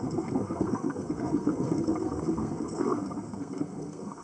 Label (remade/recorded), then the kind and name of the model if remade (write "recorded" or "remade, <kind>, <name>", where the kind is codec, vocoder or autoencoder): remade, codec, SNAC